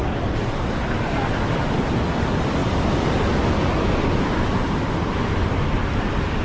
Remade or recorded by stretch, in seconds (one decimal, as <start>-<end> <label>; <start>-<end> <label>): 0.0-6.4 recorded